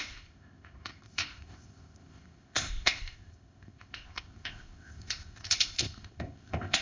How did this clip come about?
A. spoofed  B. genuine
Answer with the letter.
A